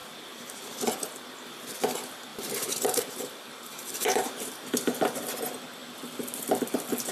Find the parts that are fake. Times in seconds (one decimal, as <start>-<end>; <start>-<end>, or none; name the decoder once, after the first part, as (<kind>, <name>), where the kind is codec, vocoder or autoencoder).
2.3-5.2 (vocoder, BigVGAN v2)